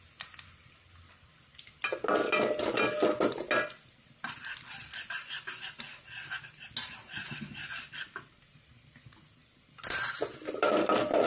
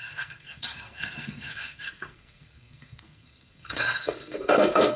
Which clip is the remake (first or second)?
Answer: second